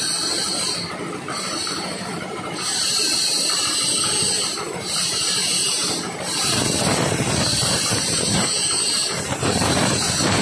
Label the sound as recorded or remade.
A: remade